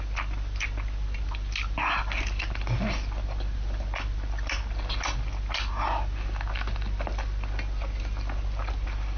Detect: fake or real real